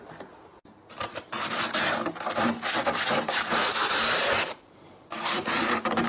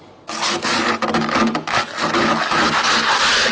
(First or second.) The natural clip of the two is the second